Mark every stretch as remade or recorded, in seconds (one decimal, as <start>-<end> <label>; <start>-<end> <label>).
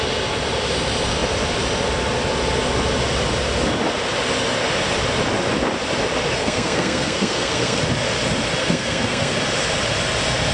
0.0-6.3 recorded; 6.3-7.8 remade; 7.8-8.6 recorded; 8.6-9.3 remade; 9.3-10.5 recorded